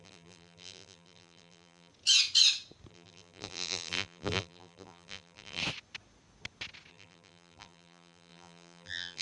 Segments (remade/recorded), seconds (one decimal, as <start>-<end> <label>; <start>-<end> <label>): 0.0-1.9 remade; 1.9-2.9 recorded; 2.9-5.6 remade; 5.6-6.9 recorded; 6.9-9.2 remade

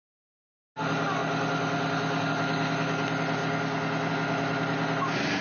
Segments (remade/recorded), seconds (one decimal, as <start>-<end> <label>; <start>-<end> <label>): 0.0-5.4 recorded

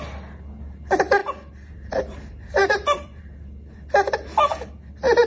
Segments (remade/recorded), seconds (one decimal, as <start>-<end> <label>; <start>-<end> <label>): 0.0-2.6 recorded; 2.6-3.2 remade; 3.2-5.3 recorded